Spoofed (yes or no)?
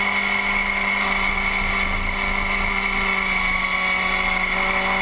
no